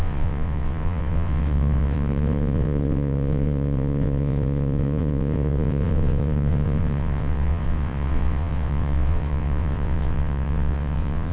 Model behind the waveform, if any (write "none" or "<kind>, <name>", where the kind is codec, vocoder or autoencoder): vocoder, WaveNeXt